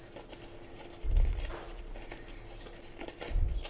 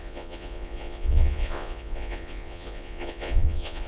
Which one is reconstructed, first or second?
second